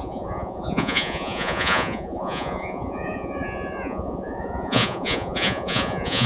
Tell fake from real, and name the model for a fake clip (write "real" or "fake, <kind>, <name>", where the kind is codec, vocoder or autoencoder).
fake, vocoder, Vocos